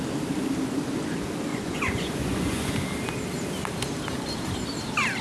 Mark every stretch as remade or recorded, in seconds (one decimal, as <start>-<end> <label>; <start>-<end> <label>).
0.0-1.5 recorded; 1.5-2.7 remade; 2.7-5.2 recorded